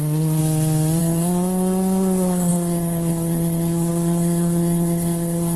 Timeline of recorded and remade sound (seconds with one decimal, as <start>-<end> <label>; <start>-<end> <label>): 0.0-0.4 remade; 0.4-1.0 recorded; 1.0-5.6 remade